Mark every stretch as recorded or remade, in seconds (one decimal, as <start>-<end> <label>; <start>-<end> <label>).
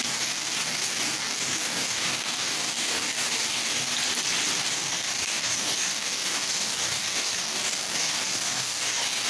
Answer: 0.0-3.9 remade; 3.9-4.6 recorded; 4.6-9.3 remade